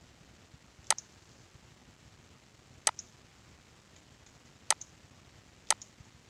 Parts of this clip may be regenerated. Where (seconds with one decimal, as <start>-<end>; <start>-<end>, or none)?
none